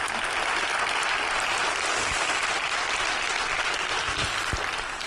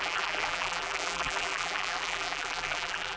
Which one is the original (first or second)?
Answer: first